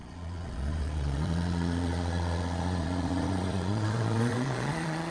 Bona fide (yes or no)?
no